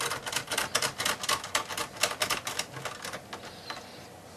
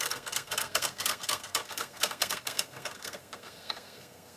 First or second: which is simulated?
second